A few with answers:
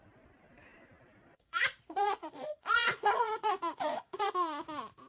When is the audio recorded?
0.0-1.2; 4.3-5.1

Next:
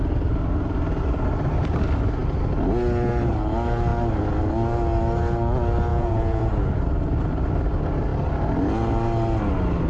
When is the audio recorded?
0.0-5.9; 6.6-9.9

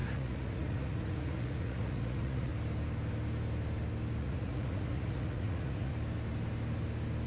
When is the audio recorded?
2.5-4.2; 5.9-7.3

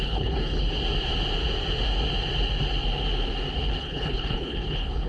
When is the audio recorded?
0.7-3.8

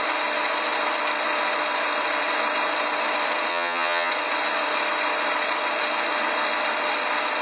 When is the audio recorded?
0.0-3.5; 4.1-7.4